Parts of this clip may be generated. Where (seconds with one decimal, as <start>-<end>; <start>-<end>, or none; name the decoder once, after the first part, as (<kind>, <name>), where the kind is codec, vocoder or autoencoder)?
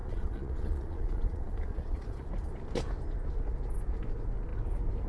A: 0.0-2.3 (vocoder, Vocos)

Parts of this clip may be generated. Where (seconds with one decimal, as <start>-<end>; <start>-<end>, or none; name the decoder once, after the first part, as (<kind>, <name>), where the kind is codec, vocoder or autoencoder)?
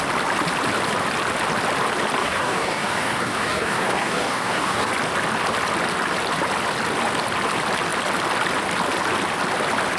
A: 2.2-4.9 (codec, DAC)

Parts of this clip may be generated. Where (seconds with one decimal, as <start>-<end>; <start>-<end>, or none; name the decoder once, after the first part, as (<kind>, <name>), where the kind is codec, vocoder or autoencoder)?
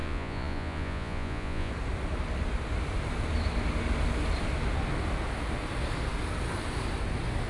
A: 0.0-1.7 (vocoder, Vocos)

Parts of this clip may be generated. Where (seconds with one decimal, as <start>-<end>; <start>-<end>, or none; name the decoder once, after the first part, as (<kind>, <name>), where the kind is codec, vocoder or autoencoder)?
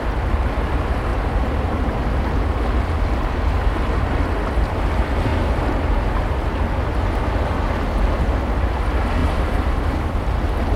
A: 1.1-2.0 (vocoder, BigVGAN v2); 9.2-10.2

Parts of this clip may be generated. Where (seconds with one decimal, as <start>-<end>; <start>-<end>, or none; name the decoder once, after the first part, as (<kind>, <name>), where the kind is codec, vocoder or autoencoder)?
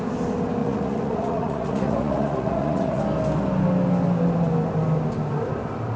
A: 0.6-3.0 (vocoder, Vocos)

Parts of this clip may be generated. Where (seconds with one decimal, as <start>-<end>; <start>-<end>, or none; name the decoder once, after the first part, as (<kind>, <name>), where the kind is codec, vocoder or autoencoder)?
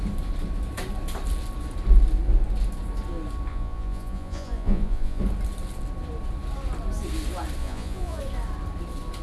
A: 3.5-5.2 (vocoder, Vocos); 7.6-8.2